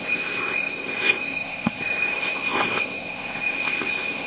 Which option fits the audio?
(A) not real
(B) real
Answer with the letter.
A